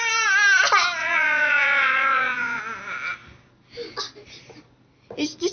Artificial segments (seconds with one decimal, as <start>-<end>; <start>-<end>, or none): 1.0-2.6

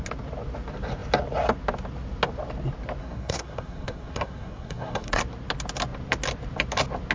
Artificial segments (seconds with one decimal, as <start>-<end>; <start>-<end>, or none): 3.0-5.2

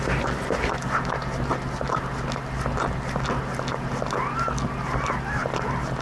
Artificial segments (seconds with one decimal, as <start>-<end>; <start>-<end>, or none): none